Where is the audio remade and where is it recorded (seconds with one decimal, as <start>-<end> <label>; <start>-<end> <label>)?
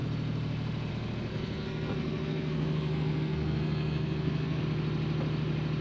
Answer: 0.0-1.3 recorded; 1.3-4.6 remade; 4.6-5.8 recorded